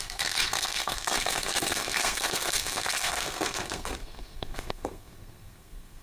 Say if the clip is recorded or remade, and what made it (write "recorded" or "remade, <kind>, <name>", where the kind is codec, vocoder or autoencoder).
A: remade, codec, SNAC